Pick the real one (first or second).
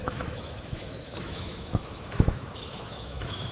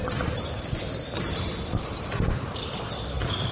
second